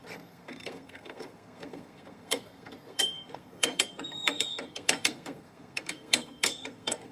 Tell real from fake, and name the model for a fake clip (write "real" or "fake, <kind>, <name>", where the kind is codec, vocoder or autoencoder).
fake, codec, SNAC